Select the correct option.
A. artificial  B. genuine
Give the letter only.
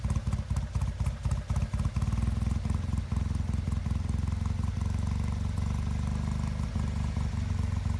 B